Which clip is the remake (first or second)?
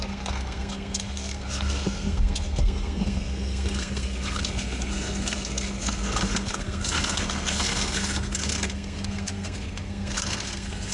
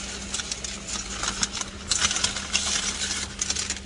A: first